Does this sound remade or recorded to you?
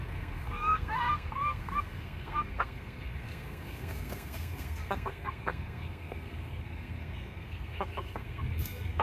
remade